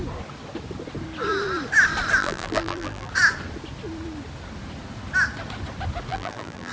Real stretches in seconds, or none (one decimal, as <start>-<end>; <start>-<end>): 0.0-2.2; 3.1-6.1